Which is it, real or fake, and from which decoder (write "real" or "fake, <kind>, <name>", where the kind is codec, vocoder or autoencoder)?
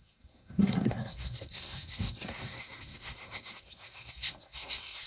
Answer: fake, codec, SNAC